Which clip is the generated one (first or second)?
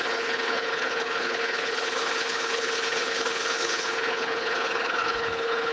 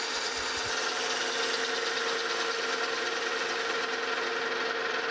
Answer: first